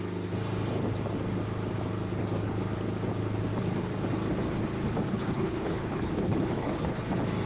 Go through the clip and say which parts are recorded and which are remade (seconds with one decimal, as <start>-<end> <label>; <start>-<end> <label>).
0.0-5.1 recorded; 5.1-7.0 remade; 7.0-7.5 recorded